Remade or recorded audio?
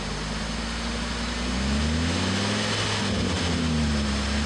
recorded